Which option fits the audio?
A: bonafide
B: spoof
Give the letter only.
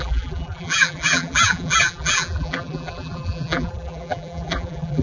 B